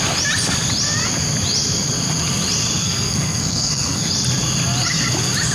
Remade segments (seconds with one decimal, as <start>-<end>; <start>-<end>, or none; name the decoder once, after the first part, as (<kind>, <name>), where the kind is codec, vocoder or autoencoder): 2.8-4.1 (codec, SNAC)